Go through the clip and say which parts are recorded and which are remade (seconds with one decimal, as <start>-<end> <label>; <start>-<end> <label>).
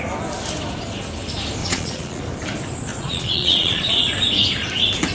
0.0-1.6 recorded; 1.6-2.2 remade; 2.2-2.9 recorded; 2.9-4.0 remade; 4.0-5.1 recorded